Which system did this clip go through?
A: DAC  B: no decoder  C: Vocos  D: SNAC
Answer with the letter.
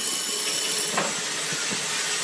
B